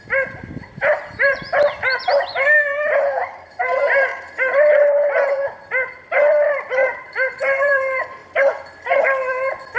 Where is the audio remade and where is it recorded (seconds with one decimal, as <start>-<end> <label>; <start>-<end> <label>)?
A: 0.0-2.3 remade; 2.3-3.1 recorded; 3.1-4.1 remade; 4.1-6.2 recorded; 6.2-8.2 remade; 8.2-9.8 recorded